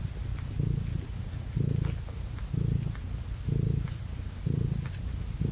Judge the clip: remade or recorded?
recorded